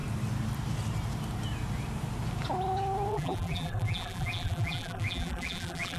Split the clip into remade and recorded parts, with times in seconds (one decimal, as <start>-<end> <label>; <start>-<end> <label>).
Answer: 0.0-3.1 recorded; 3.1-6.0 remade